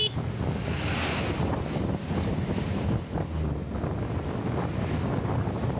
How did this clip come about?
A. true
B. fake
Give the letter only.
A